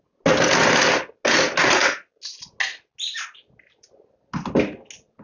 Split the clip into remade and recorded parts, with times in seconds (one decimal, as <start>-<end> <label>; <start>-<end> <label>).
0.0-5.2 recorded